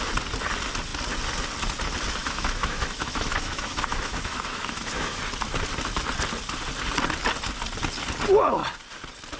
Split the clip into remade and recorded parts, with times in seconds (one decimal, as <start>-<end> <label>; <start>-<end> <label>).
0.0-2.2 recorded; 2.2-5.2 remade; 5.2-9.4 recorded